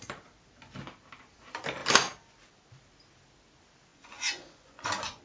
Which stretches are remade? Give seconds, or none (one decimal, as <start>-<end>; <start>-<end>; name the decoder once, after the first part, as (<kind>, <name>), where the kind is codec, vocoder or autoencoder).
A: 3.9-5.2 (vocoder, Vocos)